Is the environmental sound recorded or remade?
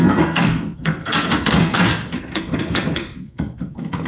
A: remade